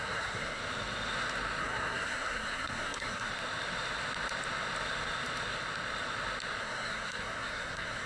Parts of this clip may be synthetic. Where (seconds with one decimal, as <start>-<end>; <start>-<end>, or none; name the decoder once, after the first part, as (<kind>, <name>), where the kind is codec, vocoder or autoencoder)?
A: 0.0-0.6 (codec, SNAC); 1.6-3.3; 6.6-8.1